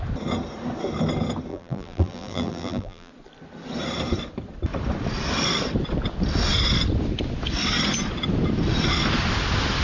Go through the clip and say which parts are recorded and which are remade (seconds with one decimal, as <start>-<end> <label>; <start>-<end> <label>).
0.0-1.5 recorded; 1.5-3.1 remade; 3.1-9.8 recorded